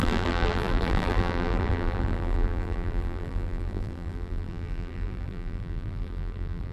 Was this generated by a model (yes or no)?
yes